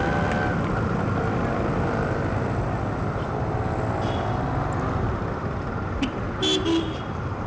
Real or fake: real